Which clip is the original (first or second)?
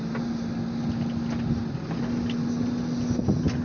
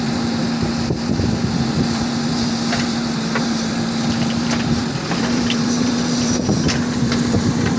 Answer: first